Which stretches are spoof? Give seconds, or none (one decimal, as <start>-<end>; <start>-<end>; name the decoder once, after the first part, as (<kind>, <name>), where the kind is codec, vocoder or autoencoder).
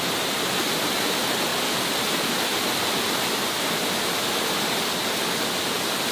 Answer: none